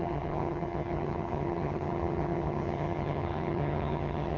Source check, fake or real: fake